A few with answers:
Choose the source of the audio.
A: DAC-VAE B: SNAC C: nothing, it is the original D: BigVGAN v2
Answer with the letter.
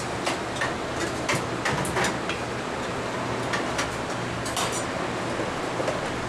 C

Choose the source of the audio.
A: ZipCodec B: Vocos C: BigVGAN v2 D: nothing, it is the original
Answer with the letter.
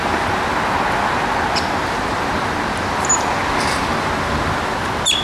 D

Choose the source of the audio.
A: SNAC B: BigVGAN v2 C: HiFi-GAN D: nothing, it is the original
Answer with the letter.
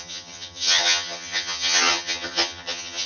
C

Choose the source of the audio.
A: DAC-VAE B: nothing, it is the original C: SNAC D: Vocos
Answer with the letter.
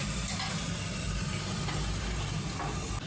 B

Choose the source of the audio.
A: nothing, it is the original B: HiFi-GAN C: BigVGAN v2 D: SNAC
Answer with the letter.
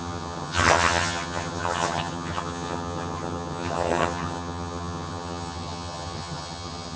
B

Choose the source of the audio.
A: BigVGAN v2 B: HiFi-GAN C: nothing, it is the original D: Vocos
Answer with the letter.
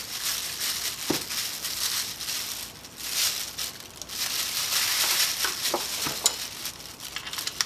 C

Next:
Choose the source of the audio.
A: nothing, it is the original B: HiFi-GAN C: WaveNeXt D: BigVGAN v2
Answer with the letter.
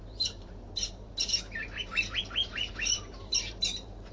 D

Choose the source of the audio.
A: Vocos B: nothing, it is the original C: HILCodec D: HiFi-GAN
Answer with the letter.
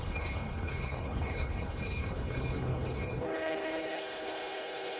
C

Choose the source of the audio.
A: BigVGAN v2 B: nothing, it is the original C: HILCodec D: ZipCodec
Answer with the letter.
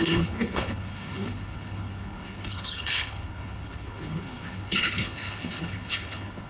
C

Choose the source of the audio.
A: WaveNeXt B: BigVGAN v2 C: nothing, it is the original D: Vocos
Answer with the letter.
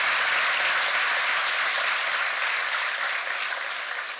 C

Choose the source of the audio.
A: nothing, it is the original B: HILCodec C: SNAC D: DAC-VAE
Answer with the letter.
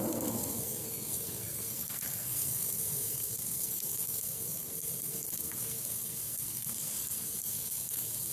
C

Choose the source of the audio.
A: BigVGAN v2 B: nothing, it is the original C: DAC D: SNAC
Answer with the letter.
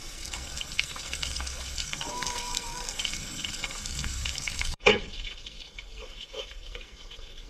D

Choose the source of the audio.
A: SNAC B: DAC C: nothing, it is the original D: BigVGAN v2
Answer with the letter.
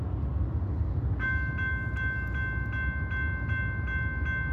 C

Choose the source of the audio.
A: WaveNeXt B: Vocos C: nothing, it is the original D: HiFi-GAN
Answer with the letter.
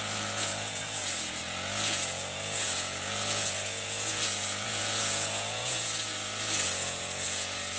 B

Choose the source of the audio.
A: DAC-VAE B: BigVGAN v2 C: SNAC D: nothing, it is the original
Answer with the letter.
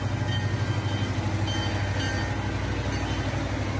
D